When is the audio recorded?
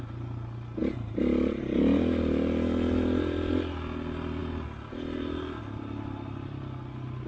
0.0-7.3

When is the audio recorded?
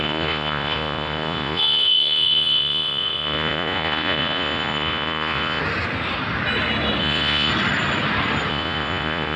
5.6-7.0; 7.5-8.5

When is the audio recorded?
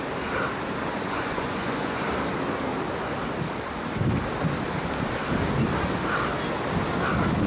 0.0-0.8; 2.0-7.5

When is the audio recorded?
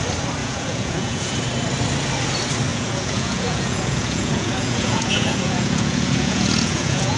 0.0-0.4; 1.3-2.7